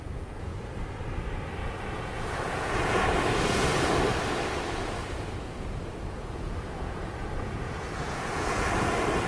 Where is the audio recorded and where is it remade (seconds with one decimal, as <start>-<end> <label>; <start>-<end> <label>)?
0.0-0.5 remade; 0.5-1.6 recorded; 1.6-3.7 remade; 3.7-5.0 recorded; 5.0-9.3 remade